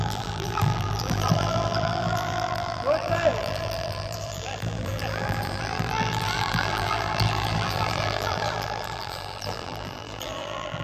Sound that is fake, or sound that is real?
fake